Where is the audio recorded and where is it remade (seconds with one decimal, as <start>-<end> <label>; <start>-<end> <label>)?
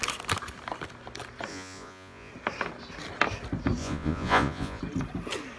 0.0-1.5 recorded; 1.5-2.3 remade; 2.3-3.8 recorded; 3.8-4.8 remade; 4.8-5.6 recorded